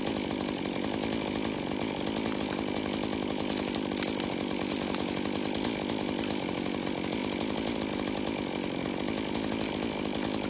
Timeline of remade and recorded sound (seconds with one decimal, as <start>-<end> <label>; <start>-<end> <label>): 0.0-10.5 recorded